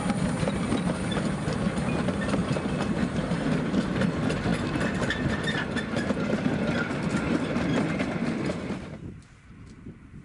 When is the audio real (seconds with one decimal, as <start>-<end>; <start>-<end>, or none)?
0.0-10.2